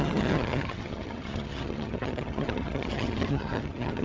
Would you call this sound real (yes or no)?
no